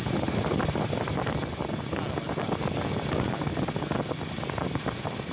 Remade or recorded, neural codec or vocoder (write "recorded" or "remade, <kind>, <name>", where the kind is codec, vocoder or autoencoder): recorded